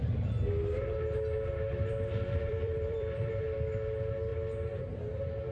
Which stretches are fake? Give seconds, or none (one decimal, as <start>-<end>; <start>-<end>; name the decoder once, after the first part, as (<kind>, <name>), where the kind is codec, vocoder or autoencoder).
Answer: 2.5-3.3 (vocoder, BigVGAN v2)